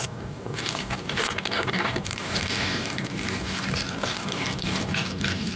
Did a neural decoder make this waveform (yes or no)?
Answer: yes